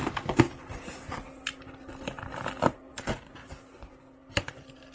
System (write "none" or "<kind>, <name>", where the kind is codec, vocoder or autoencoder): none